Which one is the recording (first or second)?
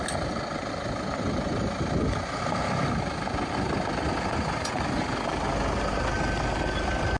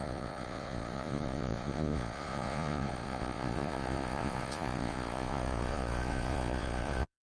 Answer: first